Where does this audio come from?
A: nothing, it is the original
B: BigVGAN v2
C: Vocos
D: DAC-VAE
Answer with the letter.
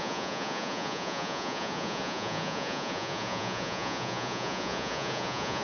C